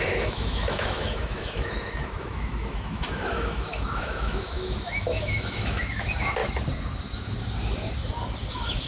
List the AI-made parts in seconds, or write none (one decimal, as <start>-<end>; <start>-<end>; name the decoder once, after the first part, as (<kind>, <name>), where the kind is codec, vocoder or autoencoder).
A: 0.0-6.4 (autoencoder, DAC-VAE); 8.5-8.9